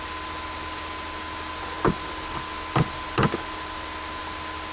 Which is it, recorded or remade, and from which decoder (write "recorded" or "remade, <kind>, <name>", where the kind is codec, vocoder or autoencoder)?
recorded